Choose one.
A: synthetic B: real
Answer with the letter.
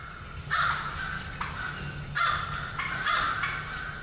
B